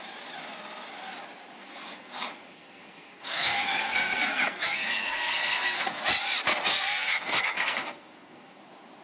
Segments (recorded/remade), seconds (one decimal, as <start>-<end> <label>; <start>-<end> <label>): 0.0-1.6 recorded; 1.6-6.0 remade; 6.0-6.7 recorded; 6.7-8.6 remade; 8.6-9.0 recorded